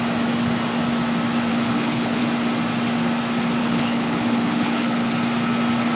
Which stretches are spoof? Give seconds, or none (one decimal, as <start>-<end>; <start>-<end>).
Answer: 1.5-2.2; 3.6-5.1